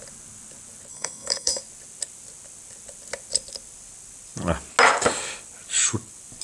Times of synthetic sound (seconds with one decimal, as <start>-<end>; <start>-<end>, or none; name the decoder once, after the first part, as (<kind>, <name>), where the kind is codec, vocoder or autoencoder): 0.9-1.6 (codec, SNAC)